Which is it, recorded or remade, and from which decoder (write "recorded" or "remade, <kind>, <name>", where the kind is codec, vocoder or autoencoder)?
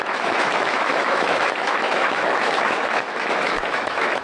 remade, autoencoder, DAC-VAE